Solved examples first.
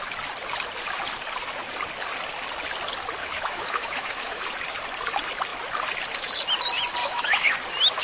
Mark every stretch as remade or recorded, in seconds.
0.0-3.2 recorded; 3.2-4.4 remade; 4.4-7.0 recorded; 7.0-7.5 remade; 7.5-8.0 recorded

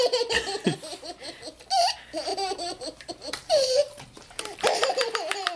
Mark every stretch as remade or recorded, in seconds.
0.0-2.3 recorded; 2.3-5.6 remade

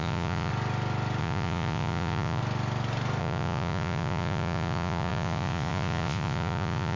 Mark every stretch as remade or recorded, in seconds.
0.0-0.5 remade; 0.5-1.2 recorded; 1.2-2.4 remade; 2.4-3.2 recorded; 3.2-7.0 remade

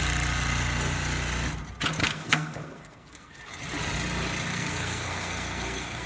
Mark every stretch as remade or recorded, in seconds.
0.0-2.0 recorded; 2.0-3.4 remade; 3.4-4.5 recorded; 4.5-6.1 remade